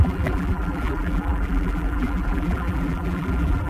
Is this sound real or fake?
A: fake